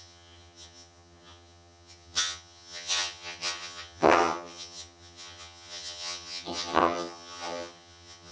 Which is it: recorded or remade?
remade